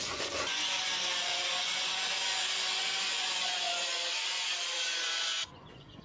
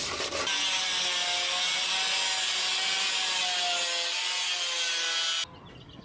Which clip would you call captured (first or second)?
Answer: second